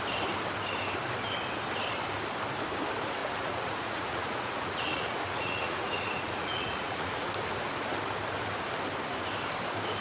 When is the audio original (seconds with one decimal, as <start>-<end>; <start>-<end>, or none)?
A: 0.0-3.2; 7.3-10.0

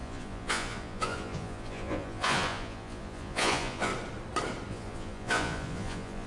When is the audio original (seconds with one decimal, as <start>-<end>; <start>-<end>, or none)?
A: 3.9-4.7